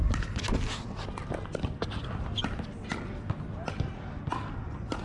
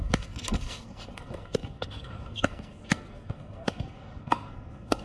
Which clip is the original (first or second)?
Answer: first